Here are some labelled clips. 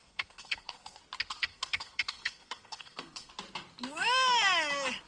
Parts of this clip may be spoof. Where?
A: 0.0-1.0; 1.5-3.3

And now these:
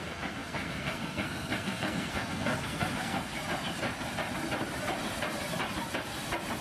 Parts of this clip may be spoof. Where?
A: 0.0-3.3

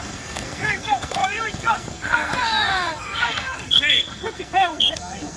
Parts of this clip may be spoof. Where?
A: 0.0-5.4

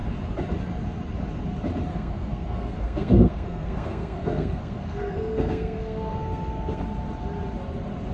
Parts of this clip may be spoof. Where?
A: 1.9-6.8

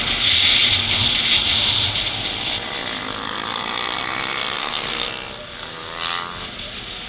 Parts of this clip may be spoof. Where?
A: 4.6-5.1

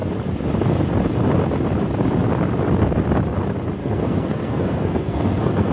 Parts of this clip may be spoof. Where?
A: 3.8-5.7

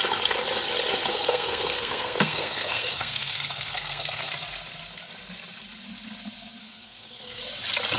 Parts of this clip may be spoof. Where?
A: 1.1-4.3; 6.6-7.4

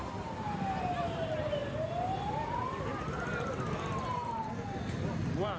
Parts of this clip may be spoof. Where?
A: none